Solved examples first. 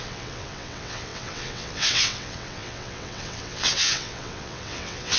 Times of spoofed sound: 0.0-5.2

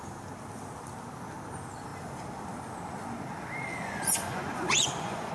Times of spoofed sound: 3.7-5.3

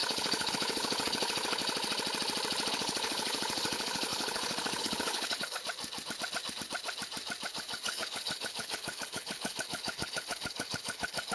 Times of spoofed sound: 0.0-1.6; 2.7-5.6; 7.5-11.3

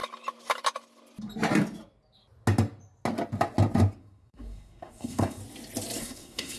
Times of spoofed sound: 4.0-5.4; 6.0-6.6

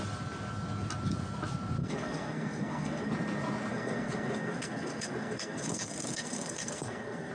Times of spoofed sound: 1.8-3.1; 3.7-7.3

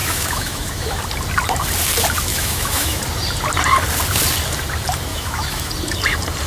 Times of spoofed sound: 0.0-1.0; 2.3-3.0; 5.1-5.7

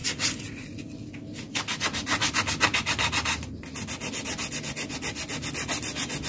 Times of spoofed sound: none